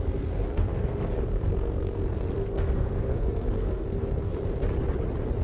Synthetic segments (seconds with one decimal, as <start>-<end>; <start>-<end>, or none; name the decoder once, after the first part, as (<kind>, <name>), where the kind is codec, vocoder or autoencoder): 0.0-4.3 (codec, SNAC)